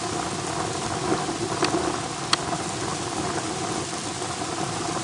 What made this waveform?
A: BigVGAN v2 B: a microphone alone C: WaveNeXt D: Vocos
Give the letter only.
B